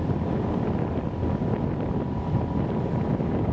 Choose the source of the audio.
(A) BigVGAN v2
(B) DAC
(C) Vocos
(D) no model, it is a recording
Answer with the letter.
D